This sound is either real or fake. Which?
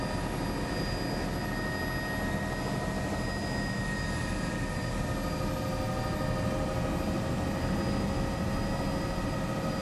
real